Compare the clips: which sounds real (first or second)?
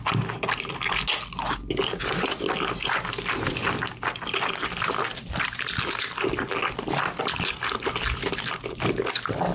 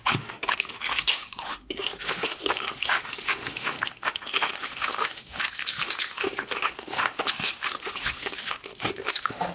first